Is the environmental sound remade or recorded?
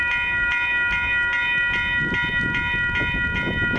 recorded